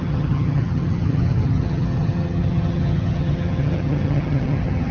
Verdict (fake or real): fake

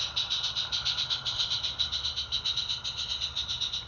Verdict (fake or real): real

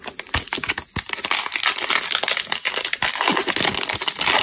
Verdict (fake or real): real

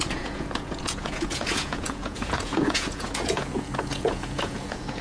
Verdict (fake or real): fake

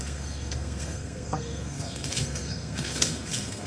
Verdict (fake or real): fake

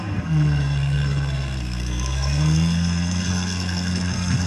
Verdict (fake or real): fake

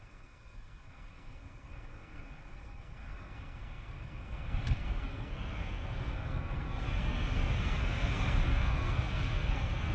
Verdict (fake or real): fake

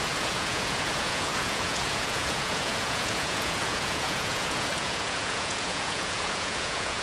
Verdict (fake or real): fake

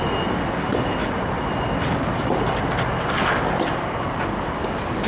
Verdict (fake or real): real